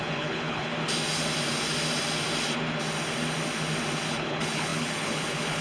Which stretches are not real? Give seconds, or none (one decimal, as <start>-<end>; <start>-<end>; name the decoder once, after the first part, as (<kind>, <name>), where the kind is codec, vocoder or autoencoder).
0.0-0.7 (codec, HILCodec); 4.1-5.6